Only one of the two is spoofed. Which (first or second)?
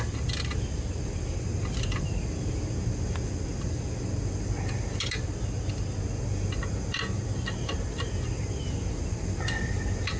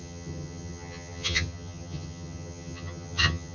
second